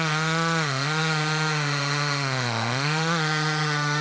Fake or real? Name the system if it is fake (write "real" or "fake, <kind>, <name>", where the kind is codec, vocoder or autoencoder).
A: fake, autoencoder, DAC-VAE